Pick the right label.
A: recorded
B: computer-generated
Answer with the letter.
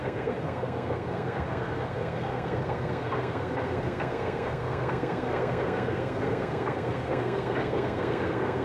B